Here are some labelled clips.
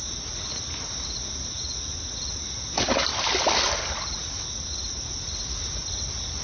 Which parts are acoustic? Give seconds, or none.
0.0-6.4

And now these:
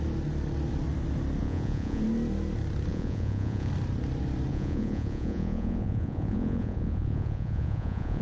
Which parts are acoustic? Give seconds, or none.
0.0-1.4; 2.0-2.9; 3.7-4.5

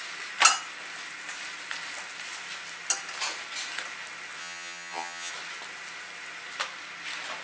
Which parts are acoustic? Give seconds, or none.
0.0-4.4; 5.3-7.4

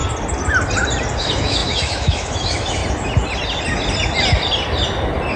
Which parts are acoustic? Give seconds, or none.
0.0-1.2; 2.8-5.4

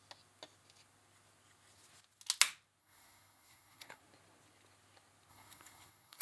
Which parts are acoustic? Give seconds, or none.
0.0-2.8; 4.0-5.3

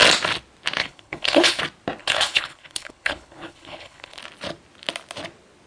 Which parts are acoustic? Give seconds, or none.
0.0-0.8; 1.6-2.0; 4.2-5.7

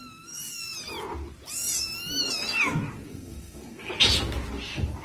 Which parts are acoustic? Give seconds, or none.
0.0-3.1; 3.9-5.0